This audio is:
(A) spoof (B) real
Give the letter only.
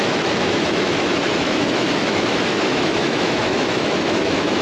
A